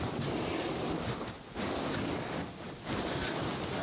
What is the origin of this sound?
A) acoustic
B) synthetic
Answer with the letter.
A